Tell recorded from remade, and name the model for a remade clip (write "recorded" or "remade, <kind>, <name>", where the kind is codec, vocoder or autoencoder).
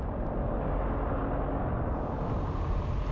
recorded